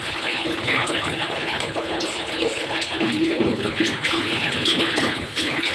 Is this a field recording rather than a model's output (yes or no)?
no